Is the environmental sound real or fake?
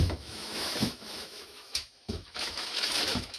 fake